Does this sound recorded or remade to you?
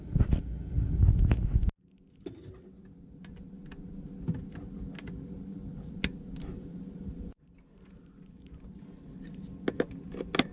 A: recorded